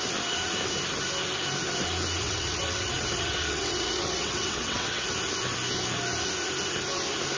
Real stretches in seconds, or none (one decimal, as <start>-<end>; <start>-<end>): 0.0-2.2; 5.0-7.4